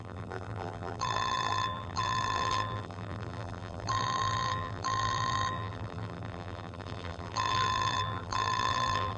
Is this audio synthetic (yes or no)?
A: yes